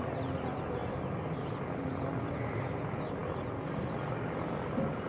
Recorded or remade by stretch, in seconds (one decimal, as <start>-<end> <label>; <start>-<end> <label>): 0.0-5.1 recorded